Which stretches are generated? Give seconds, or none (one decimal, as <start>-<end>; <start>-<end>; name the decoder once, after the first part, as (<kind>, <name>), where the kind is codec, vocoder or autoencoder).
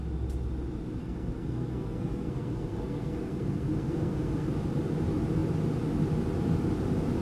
1.0-4.5 (codec, SNAC)